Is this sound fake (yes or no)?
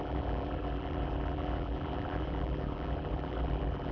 yes